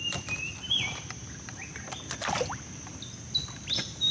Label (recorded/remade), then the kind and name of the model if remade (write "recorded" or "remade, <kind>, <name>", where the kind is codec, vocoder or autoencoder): recorded